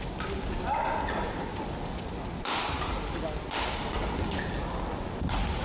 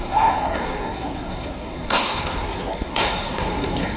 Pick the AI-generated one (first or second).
second